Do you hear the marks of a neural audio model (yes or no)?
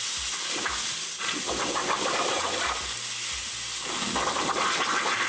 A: no